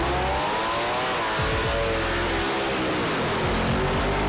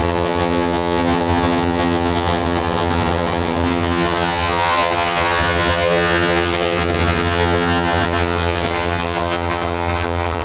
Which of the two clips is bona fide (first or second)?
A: first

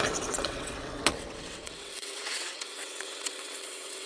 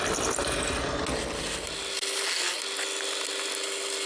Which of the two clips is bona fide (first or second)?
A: second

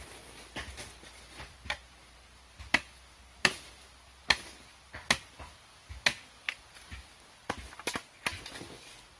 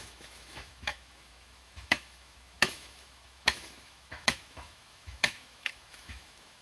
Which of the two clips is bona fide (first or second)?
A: first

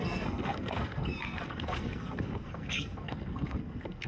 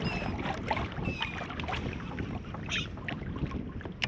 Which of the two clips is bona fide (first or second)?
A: second